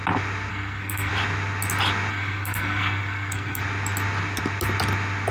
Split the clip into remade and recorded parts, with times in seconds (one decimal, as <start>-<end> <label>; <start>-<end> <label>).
0.0-0.5 recorded; 0.5-1.1 remade; 1.1-2.1 recorded; 2.1-3.6 remade; 3.6-5.3 recorded